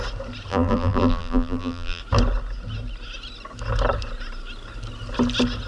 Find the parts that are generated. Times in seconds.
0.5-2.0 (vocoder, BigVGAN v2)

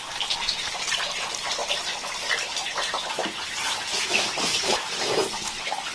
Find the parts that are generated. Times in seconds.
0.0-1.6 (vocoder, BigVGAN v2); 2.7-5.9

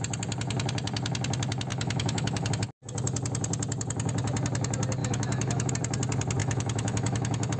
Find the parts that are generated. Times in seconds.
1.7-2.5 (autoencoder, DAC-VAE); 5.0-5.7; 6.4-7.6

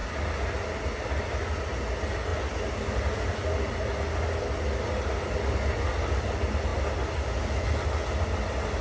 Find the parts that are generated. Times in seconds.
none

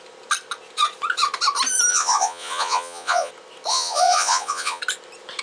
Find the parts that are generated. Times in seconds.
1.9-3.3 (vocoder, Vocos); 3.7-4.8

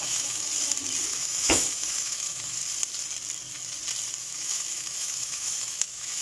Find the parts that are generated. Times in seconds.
0.0-0.5 (autoencoder, DAC-VAE); 1.1-2.6; 4.2-6.2

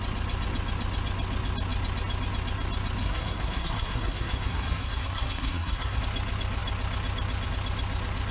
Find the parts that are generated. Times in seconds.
3.0-6.0 (codec, SNAC)

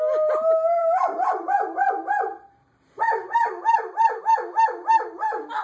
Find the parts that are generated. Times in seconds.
0.8-4.2 (vocoder, BigVGAN v2)